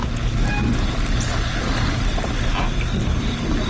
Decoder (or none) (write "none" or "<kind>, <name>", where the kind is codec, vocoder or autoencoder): none